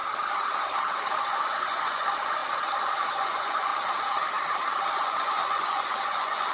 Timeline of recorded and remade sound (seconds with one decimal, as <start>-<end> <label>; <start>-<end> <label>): 0.0-1.2 recorded; 1.2-2.4 remade; 2.4-2.9 recorded; 2.9-3.7 remade; 3.7-4.9 recorded; 4.9-6.5 remade